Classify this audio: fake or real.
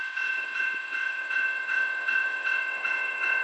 fake